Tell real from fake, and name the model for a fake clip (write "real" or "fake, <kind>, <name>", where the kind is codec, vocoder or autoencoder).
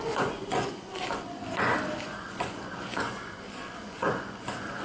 fake, vocoder, Vocos